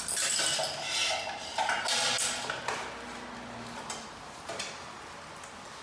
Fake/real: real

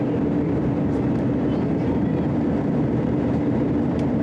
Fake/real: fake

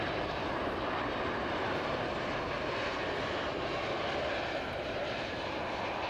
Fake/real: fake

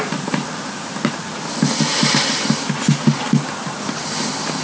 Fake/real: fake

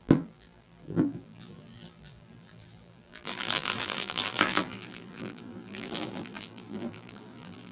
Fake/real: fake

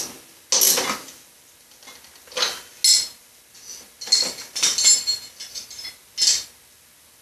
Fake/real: real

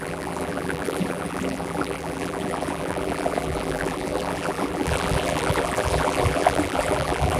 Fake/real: fake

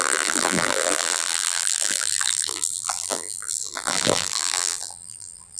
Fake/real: fake